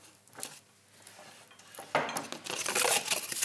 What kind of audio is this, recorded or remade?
recorded